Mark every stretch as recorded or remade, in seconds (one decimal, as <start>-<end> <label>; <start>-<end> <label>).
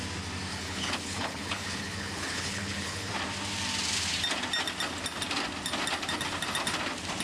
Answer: 0.0-0.5 recorded; 0.5-3.1 remade; 3.1-7.2 recorded